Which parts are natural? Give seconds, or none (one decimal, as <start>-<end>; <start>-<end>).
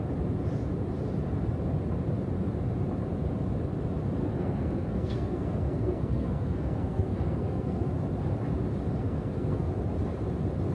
0.0-4.2; 7.9-8.9; 9.7-10.7